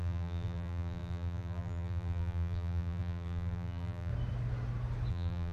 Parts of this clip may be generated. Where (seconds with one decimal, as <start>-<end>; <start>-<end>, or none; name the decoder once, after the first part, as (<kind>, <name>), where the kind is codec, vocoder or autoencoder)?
0.0-4.1 (vocoder, BigVGAN v2); 5.1-5.5